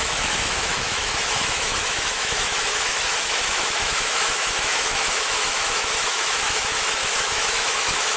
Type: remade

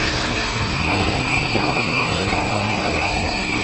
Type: remade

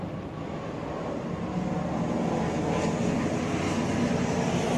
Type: remade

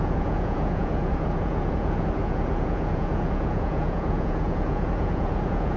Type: remade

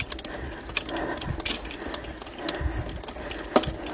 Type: recorded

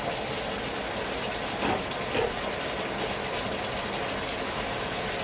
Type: recorded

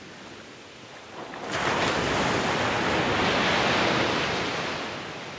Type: recorded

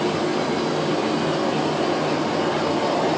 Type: recorded